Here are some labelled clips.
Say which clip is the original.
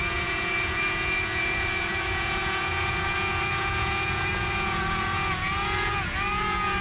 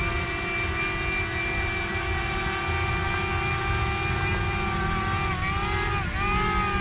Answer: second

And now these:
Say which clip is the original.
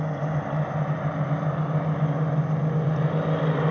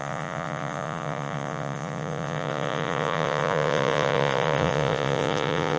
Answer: first